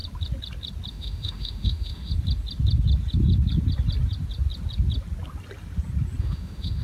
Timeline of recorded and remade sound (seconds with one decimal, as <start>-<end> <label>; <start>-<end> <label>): 0.0-0.9 recorded; 0.9-2.1 remade; 2.1-6.2 recorded; 6.2-6.8 remade